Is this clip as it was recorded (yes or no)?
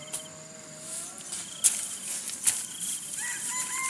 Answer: yes